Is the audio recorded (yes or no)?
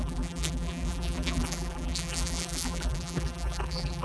no